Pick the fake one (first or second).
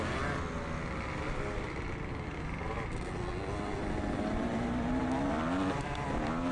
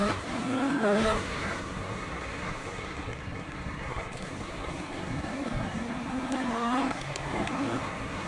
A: second